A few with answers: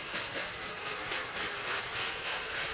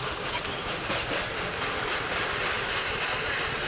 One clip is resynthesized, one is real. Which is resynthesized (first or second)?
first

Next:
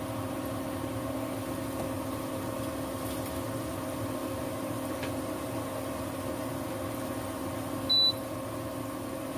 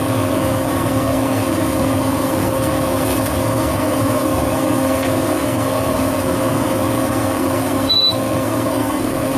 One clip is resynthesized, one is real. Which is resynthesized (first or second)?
second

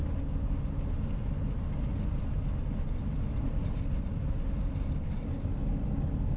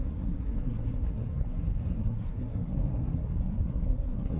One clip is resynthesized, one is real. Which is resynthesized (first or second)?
second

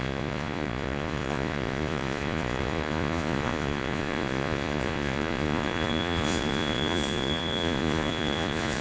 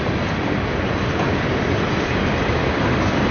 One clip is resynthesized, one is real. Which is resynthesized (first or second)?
first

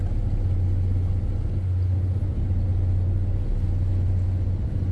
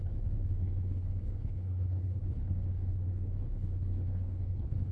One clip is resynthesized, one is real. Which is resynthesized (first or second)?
second